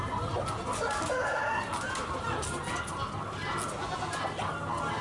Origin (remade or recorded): recorded